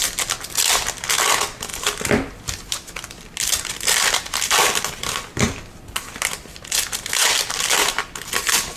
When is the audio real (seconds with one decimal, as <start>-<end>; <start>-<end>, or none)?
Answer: 0.0-8.8